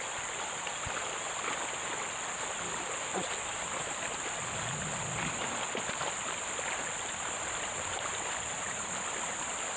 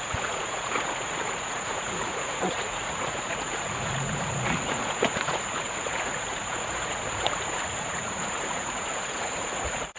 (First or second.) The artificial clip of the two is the second